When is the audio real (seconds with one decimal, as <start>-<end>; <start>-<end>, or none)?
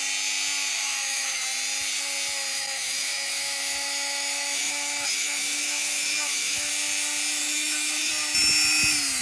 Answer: 0.0-0.7; 1.4-2.5; 6.7-7.4; 8.1-9.2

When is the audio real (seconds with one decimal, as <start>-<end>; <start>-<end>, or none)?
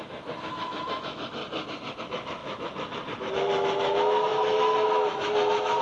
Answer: 1.4-2.0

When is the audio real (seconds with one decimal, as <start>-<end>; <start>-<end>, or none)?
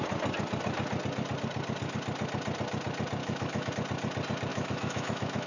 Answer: 0.0-3.2; 3.7-4.5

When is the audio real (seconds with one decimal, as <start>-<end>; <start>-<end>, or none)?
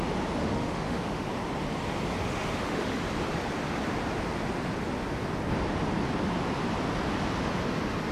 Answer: 0.0-0.4; 1.3-2.2; 3.0-8.1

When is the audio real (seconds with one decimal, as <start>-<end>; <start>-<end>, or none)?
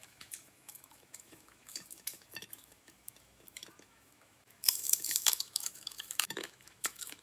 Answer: none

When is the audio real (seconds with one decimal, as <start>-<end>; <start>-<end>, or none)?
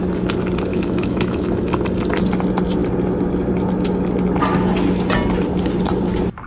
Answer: 0.0-0.7; 1.7-6.5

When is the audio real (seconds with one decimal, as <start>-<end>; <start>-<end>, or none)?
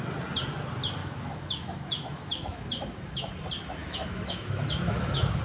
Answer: 0.0-1.0; 3.3-3.8